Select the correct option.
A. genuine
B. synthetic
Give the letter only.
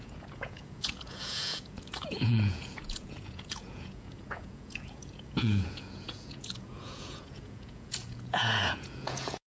B